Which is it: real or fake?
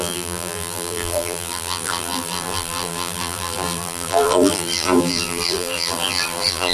fake